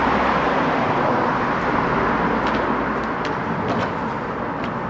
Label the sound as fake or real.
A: real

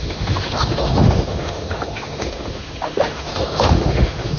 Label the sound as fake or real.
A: fake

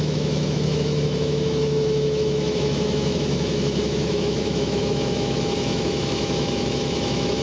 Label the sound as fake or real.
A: fake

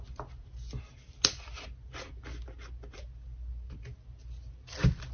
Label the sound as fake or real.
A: real